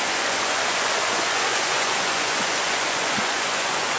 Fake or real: fake